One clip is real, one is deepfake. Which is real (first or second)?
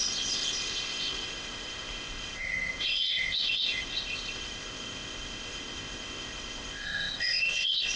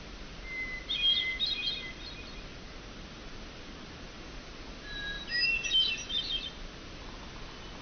second